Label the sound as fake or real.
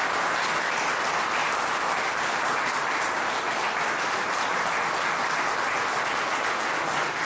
real